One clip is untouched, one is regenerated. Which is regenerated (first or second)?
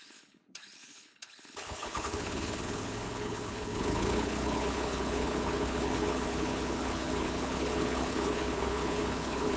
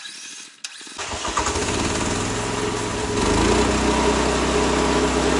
first